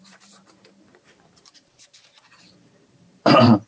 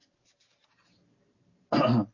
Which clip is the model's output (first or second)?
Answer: first